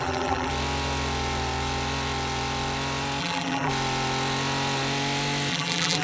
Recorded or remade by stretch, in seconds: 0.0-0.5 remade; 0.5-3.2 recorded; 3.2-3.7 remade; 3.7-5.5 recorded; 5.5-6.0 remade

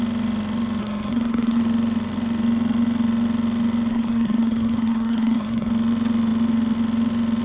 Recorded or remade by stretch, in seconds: 0.0-0.8 recorded; 0.8-1.6 remade; 1.6-3.9 recorded; 3.9-5.7 remade; 5.7-7.4 recorded

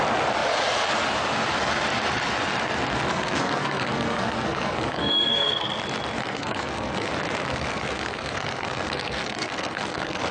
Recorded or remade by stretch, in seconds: 0.0-3.1 recorded; 3.1-5.8 remade; 5.8-6.2 recorded; 6.2-7.1 remade; 7.1-7.5 recorded; 7.5-10.3 remade

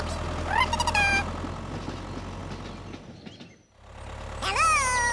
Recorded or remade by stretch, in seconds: 0.0-5.1 recorded